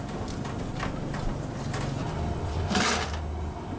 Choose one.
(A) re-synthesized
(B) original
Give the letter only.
B